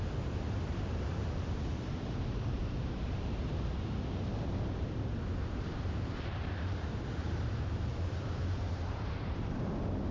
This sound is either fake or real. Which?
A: fake